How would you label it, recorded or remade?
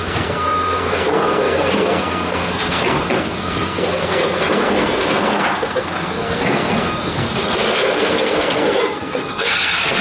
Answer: remade